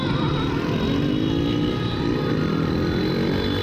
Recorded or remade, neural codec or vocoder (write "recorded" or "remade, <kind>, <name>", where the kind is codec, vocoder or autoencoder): recorded